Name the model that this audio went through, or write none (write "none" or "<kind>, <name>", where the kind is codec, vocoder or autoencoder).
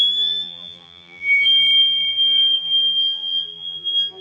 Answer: vocoder, BigVGAN v2